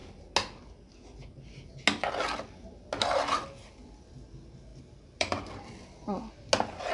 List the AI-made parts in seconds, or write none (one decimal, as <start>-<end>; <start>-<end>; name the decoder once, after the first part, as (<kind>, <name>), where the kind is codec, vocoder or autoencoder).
4.7-6.3 (vocoder, BigVGAN v2)